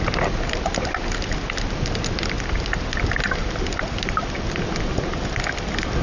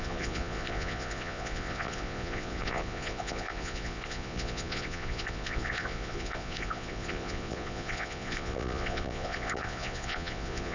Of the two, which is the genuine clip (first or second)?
first